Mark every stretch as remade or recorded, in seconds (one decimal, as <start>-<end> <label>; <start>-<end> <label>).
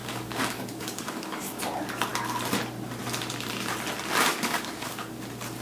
0.0-1.6 remade; 1.6-4.3 recorded; 4.3-5.1 remade; 5.1-5.6 recorded